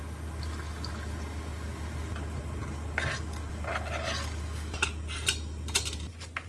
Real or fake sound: real